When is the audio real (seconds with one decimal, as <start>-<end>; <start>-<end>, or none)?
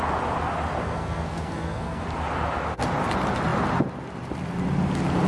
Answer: 0.0-0.8; 2.0-5.3